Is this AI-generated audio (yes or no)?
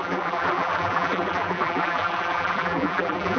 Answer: yes